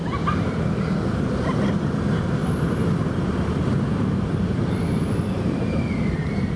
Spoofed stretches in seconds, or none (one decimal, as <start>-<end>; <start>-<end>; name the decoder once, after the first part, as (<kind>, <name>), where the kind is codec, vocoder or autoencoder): 0.0-1.1 (vocoder, BigVGAN v2); 2.4-6.1